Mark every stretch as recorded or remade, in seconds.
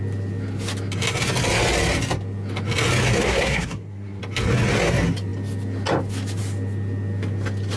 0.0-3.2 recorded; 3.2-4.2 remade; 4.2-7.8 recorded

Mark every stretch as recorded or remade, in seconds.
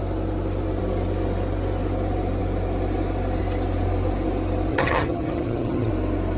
0.0-4.7 recorded; 4.7-5.9 remade; 5.9-6.4 recorded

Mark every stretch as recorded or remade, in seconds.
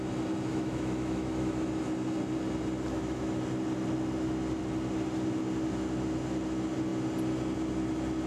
0.0-0.5 recorded; 0.5-1.7 remade; 1.7-2.9 recorded; 2.9-3.4 remade; 3.4-8.3 recorded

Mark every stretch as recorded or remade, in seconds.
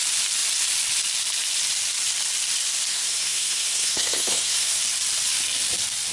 0.0-2.9 recorded; 2.9-4.8 remade; 4.8-6.1 recorded